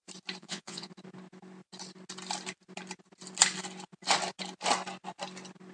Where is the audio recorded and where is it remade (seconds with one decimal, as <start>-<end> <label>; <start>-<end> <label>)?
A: 0.0-0.4 recorded; 0.4-0.9 remade; 0.9-5.7 recorded